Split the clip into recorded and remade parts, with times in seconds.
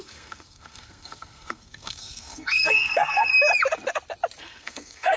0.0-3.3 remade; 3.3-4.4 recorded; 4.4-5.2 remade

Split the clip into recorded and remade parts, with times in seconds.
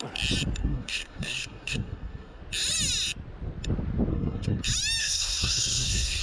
0.0-0.6 recorded; 0.6-2.4 remade; 2.4-4.1 recorded; 4.1-4.6 remade; 4.6-5.0 recorded; 5.0-6.2 remade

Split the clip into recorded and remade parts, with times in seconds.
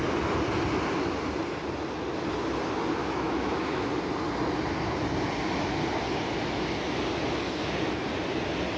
0.0-3.0 recorded; 3.0-3.9 remade; 3.9-8.8 recorded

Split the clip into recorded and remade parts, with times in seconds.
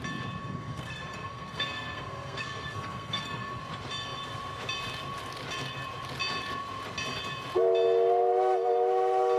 0.0-0.4 recorded; 0.4-3.6 remade; 3.6-9.4 recorded